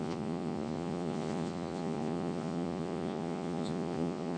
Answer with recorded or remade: remade